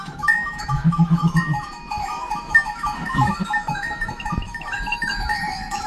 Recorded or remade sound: remade